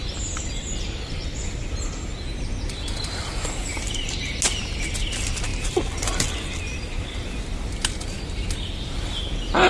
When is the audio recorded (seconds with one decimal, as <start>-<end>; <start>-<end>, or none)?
0.0-9.7